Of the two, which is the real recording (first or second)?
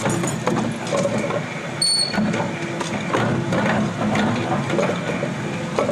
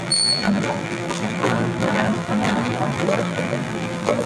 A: first